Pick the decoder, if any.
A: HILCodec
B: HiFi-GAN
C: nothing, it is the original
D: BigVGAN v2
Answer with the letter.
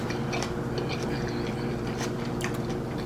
C